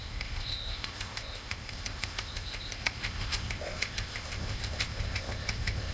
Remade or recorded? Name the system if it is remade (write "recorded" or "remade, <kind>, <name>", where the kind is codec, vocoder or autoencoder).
remade, codec, ZipCodec